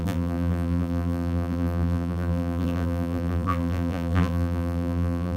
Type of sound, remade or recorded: remade